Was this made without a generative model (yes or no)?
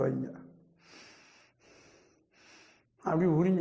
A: yes